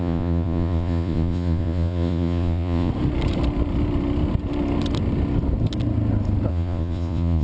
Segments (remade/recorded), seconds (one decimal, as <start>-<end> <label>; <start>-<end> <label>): 0.0-2.9 remade; 2.9-6.5 recorded; 6.5-7.4 remade